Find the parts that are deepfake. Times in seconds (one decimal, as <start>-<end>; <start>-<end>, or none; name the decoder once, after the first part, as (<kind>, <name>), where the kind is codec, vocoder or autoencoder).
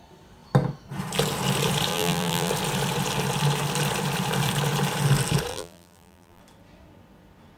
1.9-2.5 (vocoder, BigVGAN v2); 5.5-6.4